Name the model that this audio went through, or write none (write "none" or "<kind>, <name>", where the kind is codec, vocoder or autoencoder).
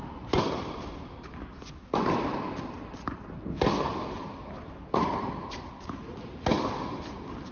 none